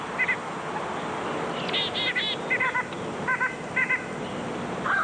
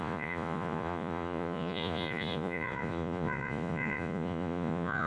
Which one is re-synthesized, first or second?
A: second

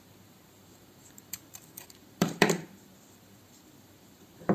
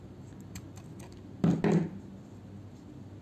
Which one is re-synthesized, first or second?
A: first